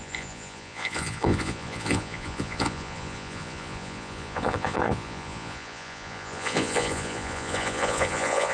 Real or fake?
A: fake